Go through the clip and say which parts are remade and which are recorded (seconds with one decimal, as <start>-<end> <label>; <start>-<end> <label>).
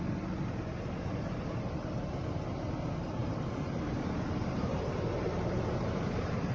0.0-3.2 recorded; 3.2-6.5 remade